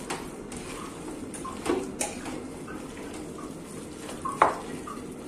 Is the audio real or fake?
real